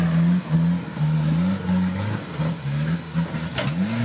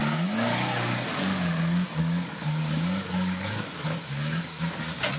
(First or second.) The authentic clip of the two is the first